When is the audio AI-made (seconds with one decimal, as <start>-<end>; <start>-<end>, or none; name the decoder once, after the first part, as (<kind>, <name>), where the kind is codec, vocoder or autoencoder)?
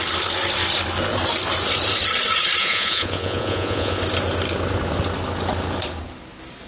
2.6-4.0 (vocoder, Vocos)